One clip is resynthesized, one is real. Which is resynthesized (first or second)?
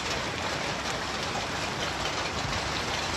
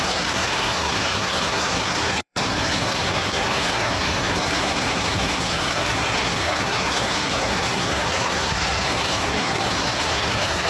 second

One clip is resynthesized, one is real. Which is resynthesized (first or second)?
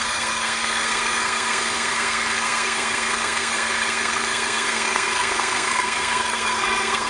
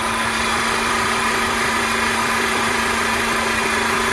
first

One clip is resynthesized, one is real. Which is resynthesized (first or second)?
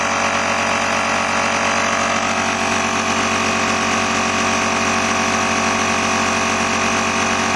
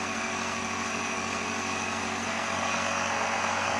second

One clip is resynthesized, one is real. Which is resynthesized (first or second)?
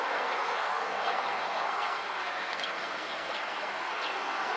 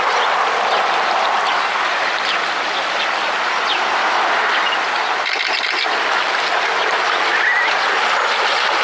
first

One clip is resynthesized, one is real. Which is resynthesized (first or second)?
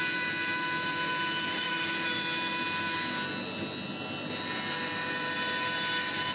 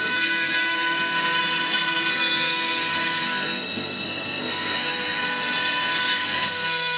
second